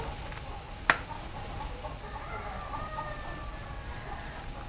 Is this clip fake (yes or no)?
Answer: no